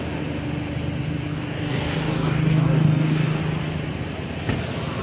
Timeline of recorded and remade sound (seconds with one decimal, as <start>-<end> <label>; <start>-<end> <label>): 0.0-1.3 recorded; 1.3-3.4 remade; 3.4-5.0 recorded